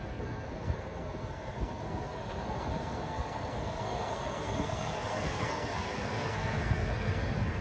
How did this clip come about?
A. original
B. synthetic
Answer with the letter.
B